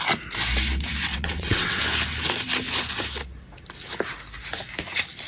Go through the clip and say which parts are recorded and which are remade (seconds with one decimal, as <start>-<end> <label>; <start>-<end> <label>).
0.0-1.1 recorded; 1.1-1.8 remade; 1.8-5.3 recorded